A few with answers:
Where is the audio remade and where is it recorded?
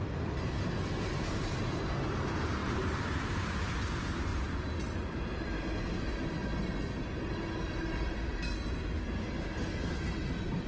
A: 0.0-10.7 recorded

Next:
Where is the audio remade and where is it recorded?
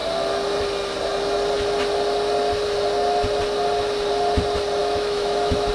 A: 0.0-4.8 recorded; 4.8-5.7 remade